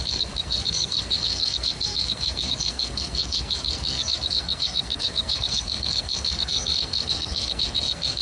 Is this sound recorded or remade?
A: remade